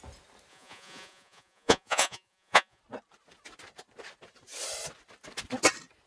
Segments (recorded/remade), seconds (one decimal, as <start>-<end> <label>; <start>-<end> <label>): 0.0-0.5 recorded; 0.5-2.8 remade; 2.8-6.1 recorded

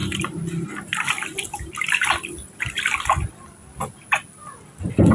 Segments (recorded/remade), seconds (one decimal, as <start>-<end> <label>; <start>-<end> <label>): 0.0-5.1 recorded